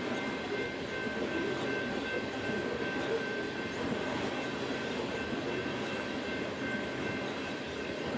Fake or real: real